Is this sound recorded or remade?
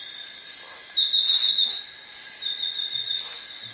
recorded